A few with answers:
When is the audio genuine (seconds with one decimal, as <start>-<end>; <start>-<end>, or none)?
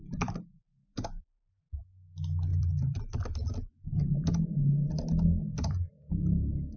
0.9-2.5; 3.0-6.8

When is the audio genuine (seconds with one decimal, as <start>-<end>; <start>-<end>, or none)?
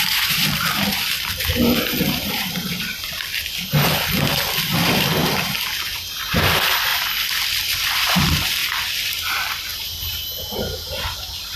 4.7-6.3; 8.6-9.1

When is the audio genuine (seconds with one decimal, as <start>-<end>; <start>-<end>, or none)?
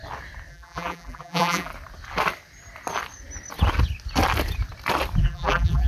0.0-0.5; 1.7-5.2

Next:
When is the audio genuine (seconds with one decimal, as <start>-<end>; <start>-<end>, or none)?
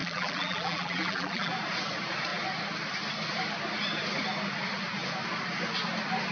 1.5-6.3